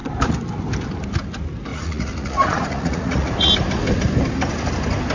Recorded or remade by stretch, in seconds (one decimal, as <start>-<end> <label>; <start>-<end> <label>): 0.0-1.7 recorded; 1.7-3.5 remade; 3.5-5.1 recorded